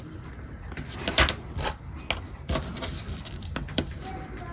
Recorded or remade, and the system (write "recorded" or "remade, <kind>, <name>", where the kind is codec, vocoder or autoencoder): recorded